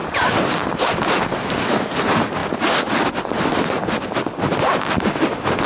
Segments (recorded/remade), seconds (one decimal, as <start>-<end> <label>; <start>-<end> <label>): 0.0-5.7 recorded